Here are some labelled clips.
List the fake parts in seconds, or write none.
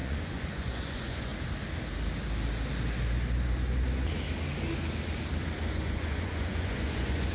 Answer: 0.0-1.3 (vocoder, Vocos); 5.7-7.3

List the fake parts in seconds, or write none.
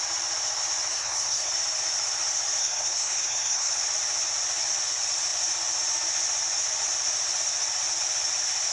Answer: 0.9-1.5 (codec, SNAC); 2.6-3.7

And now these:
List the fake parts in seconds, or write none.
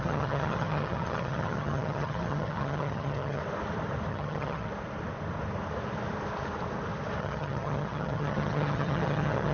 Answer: 0.0-3.4 (vocoder, HiFi-GAN); 4.1-4.7; 7.2-9.5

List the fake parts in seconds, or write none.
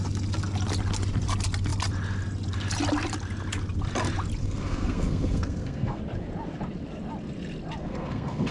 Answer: 4.4-6.0 (codec, SNAC); 7.8-8.5